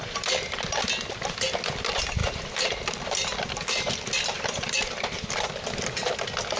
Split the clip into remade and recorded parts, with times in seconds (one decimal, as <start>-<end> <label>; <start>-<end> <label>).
0.0-0.6 remade; 0.6-2.2 recorded; 2.2-5.5 remade; 5.5-6.6 recorded